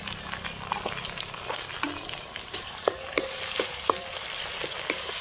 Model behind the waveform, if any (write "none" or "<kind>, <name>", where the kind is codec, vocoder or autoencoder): vocoder, BigVGAN v2